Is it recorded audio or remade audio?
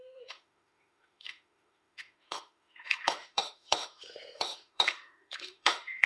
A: remade